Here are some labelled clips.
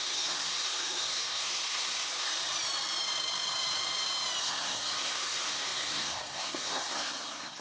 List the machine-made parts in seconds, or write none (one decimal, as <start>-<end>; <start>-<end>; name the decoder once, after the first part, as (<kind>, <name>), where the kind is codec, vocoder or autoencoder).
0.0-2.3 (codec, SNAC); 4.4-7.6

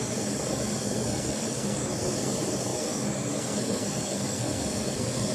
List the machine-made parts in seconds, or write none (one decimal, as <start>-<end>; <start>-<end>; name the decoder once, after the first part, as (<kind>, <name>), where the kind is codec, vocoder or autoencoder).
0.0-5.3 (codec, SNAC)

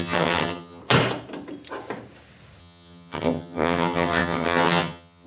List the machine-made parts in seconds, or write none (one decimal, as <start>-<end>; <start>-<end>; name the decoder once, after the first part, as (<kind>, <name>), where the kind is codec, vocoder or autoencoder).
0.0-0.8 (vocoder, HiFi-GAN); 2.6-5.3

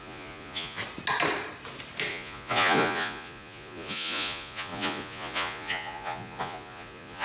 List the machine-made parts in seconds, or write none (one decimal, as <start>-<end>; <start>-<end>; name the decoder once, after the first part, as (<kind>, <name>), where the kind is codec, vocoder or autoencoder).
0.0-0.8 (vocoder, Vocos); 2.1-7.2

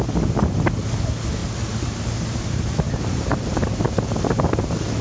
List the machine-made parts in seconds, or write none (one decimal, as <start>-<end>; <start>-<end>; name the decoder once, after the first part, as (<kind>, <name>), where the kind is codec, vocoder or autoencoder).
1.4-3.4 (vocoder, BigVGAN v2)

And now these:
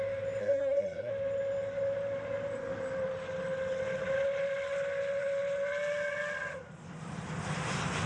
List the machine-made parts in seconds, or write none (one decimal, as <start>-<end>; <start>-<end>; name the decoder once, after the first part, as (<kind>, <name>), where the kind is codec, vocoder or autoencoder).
0.4-1.1 (codec, SNAC)

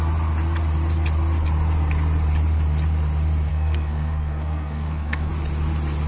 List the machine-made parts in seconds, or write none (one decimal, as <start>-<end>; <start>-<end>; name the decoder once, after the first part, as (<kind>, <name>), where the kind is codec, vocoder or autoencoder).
3.5-5.3 (codec, SNAC)

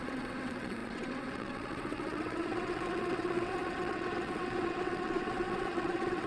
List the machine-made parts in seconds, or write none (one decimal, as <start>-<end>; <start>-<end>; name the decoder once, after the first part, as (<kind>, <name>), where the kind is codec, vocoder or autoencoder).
0.0-6.3 (vocoder, WaveNeXt)